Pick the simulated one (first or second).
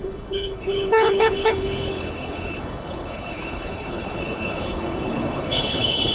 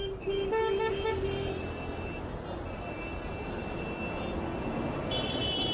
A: first